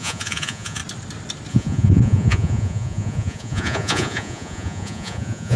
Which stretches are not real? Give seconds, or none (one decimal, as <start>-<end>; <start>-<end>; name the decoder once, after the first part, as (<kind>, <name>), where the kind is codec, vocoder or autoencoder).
0.0-0.8 (vocoder, Vocos); 1.5-5.6